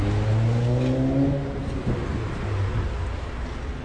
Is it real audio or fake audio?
real